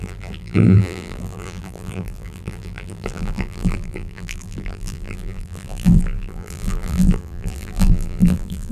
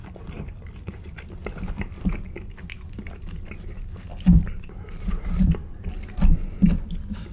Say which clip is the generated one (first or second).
first